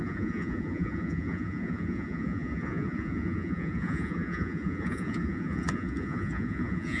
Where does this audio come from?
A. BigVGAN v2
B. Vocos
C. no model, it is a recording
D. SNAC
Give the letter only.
B